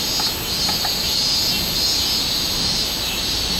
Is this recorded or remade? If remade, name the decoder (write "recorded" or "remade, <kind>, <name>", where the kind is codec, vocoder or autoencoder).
recorded